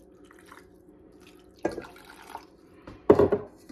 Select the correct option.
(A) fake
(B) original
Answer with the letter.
B